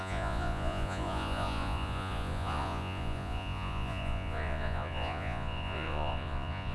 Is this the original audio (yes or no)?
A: no